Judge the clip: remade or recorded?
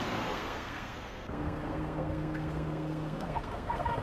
remade